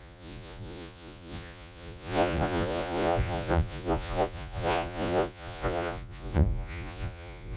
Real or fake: fake